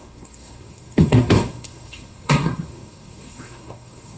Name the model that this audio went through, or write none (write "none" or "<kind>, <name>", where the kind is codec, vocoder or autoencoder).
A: codec, SNAC